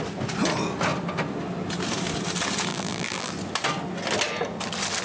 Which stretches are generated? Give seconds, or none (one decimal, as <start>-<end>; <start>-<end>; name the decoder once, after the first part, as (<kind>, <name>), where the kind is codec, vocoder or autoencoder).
2.7-3.3 (vocoder, BigVGAN v2)